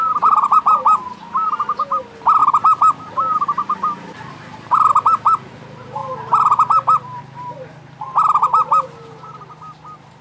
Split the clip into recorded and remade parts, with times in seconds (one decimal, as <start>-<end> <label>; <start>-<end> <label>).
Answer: 0.0-2.4 recorded; 2.4-4.9 remade; 4.9-6.0 recorded; 6.0-8.0 remade; 8.0-10.2 recorded